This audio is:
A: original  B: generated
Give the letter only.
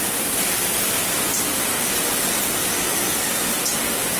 A